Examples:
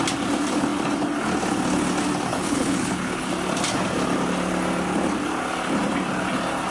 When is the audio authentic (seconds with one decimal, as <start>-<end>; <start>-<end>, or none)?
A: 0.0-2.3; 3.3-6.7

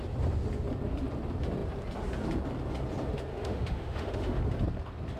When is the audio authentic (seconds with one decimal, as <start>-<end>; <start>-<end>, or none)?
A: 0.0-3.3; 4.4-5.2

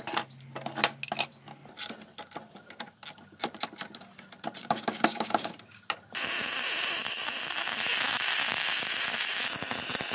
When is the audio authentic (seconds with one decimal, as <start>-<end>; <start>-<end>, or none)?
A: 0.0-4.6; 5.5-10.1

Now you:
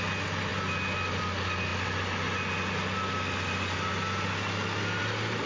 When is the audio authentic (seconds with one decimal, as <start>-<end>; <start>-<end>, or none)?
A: 0.0-5.5

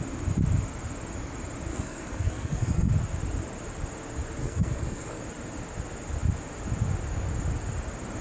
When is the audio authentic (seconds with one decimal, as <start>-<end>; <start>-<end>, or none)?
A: 0.0-1.7; 2.9-4.4; 5.2-8.2

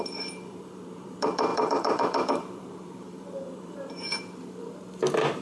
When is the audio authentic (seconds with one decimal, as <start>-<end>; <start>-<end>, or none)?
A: none

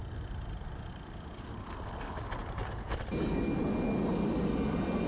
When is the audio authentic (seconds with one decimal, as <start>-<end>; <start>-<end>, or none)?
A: 0.0-5.1

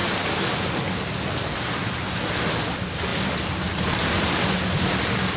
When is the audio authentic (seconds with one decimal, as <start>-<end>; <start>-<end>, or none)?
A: 0.0-5.4